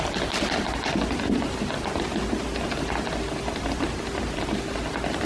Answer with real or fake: real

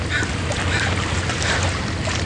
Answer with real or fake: real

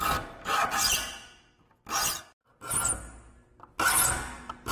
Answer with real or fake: real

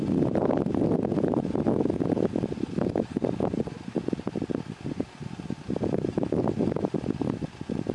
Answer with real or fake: real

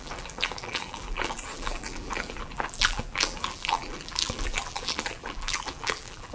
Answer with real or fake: fake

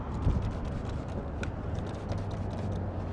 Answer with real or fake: real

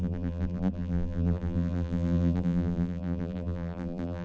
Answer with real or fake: fake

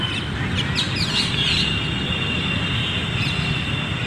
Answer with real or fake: real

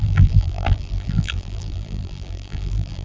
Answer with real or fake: fake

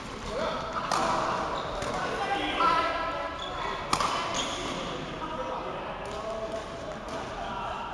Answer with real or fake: real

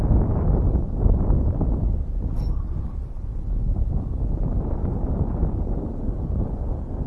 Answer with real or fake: real